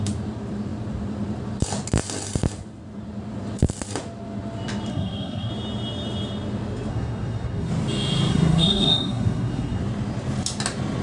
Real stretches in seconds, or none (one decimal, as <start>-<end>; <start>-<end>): 0.0-4.9; 5.5-6.9; 7.7-8.3; 9.8-11.0